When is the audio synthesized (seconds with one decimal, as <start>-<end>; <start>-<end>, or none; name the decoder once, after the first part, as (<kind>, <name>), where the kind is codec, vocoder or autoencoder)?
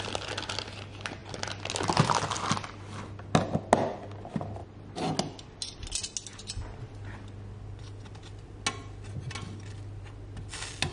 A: none